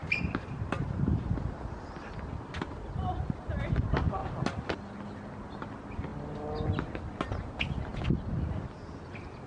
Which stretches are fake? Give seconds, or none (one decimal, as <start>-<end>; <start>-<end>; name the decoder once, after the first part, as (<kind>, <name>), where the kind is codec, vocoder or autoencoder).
0.0-1.9 (vocoder, BigVGAN v2)